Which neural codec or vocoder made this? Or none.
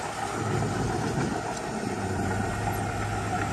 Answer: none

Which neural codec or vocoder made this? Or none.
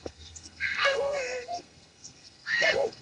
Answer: codec, SNAC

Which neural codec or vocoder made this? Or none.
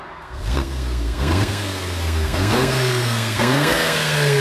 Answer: codec, SNAC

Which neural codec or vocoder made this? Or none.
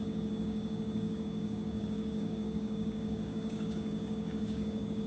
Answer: codec, DAC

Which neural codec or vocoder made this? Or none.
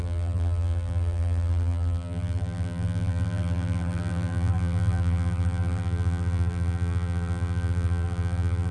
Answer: vocoder, BigVGAN v2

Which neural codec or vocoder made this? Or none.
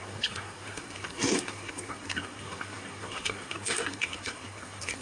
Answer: codec, SNAC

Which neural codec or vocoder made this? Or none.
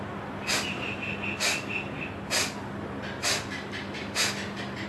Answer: none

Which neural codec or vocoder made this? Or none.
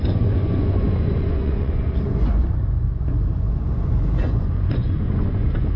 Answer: vocoder, Vocos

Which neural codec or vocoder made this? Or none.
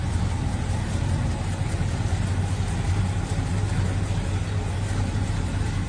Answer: none